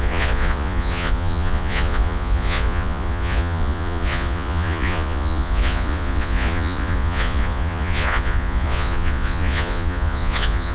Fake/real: fake